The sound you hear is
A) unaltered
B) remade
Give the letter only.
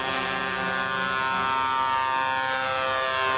A